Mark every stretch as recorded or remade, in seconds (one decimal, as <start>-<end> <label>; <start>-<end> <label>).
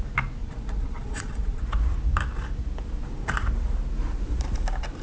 0.0-0.4 recorded; 0.4-1.6 remade; 1.6-5.0 recorded